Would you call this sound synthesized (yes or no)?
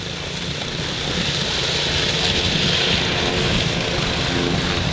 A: no